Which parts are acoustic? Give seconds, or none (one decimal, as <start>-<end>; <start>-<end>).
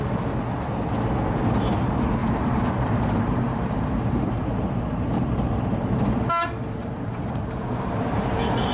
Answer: 0.0-2.2; 6.3-6.8